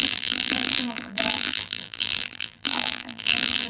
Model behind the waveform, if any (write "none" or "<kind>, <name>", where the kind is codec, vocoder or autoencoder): vocoder, BigVGAN v2